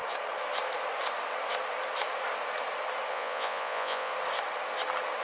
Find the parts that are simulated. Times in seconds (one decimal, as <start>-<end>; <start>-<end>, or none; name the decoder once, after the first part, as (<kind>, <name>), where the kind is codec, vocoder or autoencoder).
3.1-4.1 (vocoder, Vocos)